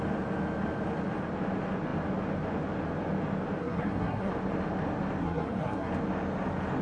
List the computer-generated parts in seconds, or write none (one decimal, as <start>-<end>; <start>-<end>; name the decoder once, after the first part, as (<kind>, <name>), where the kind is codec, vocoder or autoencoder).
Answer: 3.6-4.3 (codec, SNAC); 5.2-5.9